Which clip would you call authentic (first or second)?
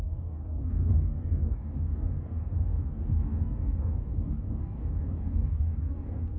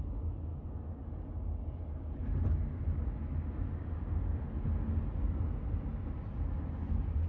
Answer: second